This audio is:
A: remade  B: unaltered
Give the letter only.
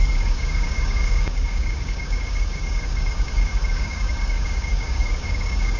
A